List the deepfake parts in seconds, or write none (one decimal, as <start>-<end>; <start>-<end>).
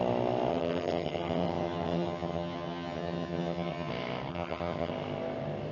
0.5-3.9; 4.3-4.9